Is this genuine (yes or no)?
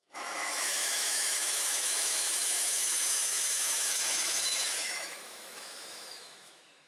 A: no